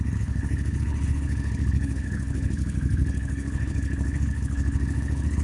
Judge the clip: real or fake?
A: fake